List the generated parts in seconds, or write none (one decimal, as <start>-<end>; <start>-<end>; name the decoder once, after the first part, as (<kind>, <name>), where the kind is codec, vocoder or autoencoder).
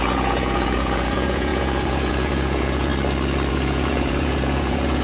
0.0-2.9 (vocoder, Vocos); 3.5-5.0